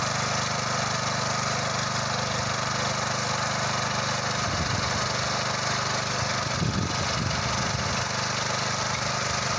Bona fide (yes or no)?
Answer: yes